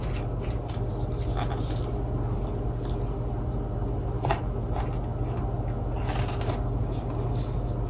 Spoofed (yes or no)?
no